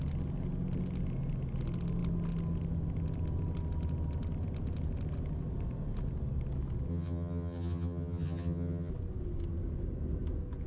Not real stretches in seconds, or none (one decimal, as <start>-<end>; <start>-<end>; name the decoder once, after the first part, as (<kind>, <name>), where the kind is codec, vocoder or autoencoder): 6.9-8.9 (vocoder, HiFi-GAN)